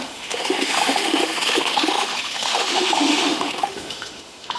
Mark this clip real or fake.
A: fake